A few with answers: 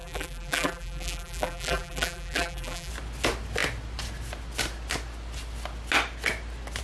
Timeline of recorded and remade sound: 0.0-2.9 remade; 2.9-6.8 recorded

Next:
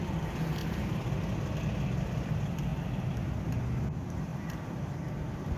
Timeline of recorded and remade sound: 0.0-4.3 recorded; 4.3-5.6 remade

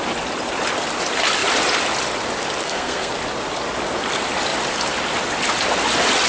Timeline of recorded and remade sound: 0.0-2.6 recorded; 2.6-3.1 remade; 3.1-6.3 recorded

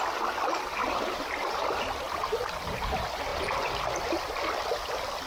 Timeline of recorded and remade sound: 0.0-0.8 recorded; 0.8-1.8 remade; 1.8-5.3 recorded

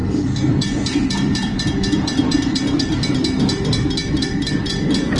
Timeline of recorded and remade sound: 0.0-3.1 remade; 3.1-4.0 recorded; 4.0-4.6 remade; 4.6-5.2 recorded

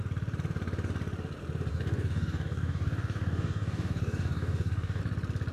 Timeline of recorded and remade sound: 0.0-1.7 recorded; 1.7-5.0 remade; 5.0-5.5 recorded